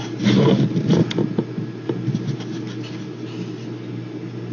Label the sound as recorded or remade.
recorded